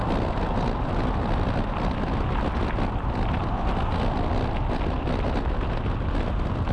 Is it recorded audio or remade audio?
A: recorded